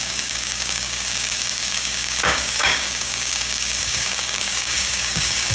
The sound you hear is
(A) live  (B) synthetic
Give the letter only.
B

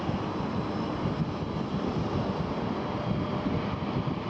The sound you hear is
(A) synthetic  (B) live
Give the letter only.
B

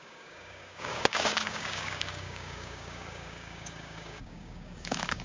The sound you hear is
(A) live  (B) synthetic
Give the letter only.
B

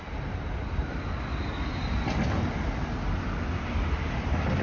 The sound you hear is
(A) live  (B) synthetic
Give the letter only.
A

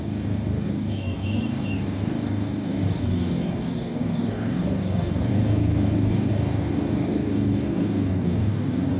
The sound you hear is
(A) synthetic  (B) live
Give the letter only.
A